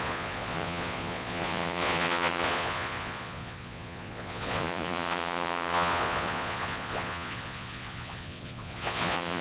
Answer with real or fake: fake